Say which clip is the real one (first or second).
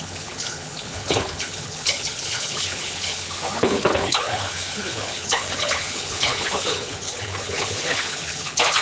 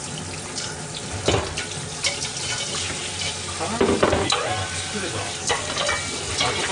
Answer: second